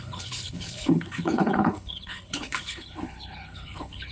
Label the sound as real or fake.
fake